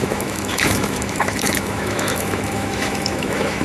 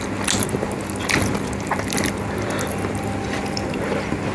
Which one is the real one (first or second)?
second